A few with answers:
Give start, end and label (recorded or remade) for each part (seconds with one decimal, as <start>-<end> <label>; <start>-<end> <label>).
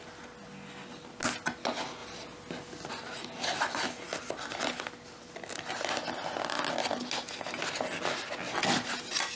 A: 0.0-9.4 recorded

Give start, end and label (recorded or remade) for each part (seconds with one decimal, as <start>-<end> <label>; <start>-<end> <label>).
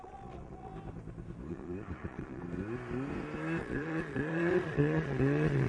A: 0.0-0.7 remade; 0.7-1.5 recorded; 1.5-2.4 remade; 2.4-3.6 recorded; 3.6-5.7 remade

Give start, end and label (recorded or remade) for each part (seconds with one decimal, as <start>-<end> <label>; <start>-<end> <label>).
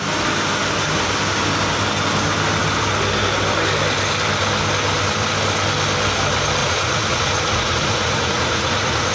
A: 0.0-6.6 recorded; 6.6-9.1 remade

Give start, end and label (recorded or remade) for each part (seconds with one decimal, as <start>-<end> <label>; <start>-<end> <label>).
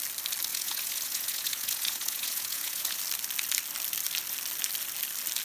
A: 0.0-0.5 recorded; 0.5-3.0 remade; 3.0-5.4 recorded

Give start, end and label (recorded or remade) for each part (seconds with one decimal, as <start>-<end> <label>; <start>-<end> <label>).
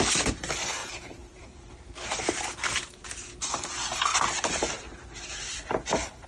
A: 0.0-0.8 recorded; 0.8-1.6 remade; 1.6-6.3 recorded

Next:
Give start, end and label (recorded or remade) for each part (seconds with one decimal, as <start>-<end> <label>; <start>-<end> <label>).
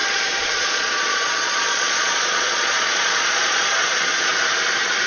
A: 0.0-4.3 remade; 4.3-5.1 recorded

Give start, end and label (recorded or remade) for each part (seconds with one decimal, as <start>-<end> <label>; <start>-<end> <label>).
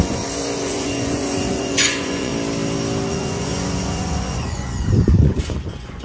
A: 0.0-2.3 remade; 2.3-3.1 recorded; 3.1-6.0 remade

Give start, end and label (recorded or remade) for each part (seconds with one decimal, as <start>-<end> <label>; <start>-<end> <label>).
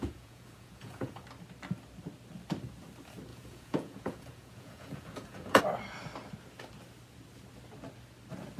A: 0.0-1.2 remade; 1.2-3.3 recorded; 3.3-5.6 remade; 5.6-8.6 recorded